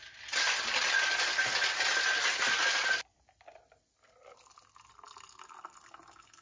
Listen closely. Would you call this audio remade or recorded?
recorded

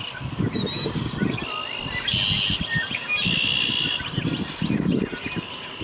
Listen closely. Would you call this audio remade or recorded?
recorded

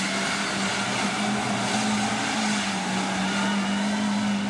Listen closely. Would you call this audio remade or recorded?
recorded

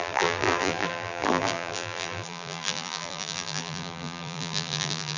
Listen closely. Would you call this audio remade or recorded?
remade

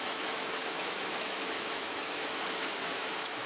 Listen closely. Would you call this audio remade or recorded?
remade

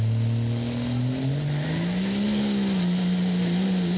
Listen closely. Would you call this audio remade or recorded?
recorded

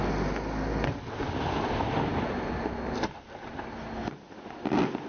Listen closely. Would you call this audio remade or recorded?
recorded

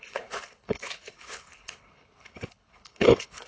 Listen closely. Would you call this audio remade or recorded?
remade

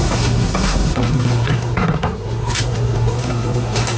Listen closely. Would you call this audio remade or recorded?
remade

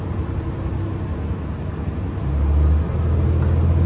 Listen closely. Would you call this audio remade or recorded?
recorded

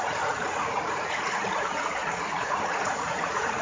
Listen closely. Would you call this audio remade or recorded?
remade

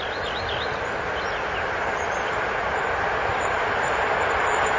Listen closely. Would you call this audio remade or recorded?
remade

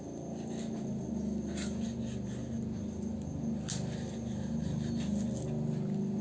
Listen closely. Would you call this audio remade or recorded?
recorded